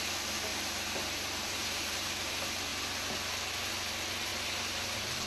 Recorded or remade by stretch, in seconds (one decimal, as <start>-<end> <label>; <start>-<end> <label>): 0.0-0.5 recorded; 0.5-2.3 remade; 2.3-4.3 recorded; 4.3-5.3 remade